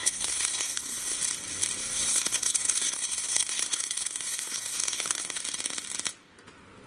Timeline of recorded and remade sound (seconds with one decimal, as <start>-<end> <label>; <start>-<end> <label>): 0.0-1.2 remade; 1.2-1.8 recorded; 1.8-5.4 remade; 5.4-6.9 recorded